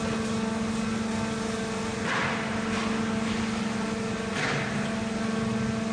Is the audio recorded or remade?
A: recorded